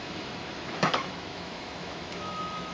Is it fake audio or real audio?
fake